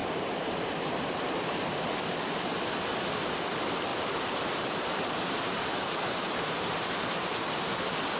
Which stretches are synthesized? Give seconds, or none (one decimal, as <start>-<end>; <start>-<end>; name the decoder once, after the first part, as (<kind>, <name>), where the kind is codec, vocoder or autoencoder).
0.0-2.7 (vocoder, BigVGAN v2); 3.9-7.5